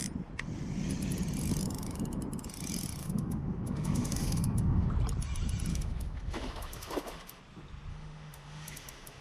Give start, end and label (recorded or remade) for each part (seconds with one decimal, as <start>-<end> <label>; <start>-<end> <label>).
0.0-3.0 recorded; 3.0-4.9 remade; 4.9-5.7 recorded; 5.7-7.4 remade; 7.4-7.9 recorded; 7.9-9.2 remade

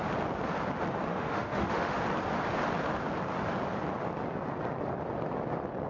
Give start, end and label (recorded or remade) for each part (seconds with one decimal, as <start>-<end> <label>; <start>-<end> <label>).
0.0-1.1 recorded; 1.1-2.0 remade; 2.0-5.9 recorded

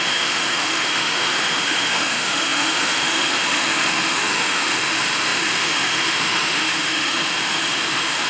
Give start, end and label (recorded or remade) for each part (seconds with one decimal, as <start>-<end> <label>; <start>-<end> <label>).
0.0-8.3 remade

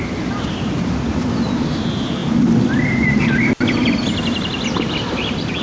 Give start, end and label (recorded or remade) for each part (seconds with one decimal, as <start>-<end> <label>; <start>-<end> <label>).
0.0-5.6 recorded